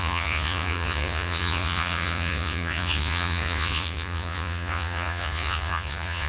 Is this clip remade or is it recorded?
remade